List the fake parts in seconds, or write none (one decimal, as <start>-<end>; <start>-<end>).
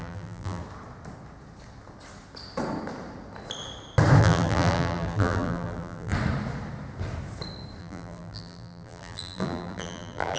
0.0-0.6; 4.2-6.1; 7.8-10.4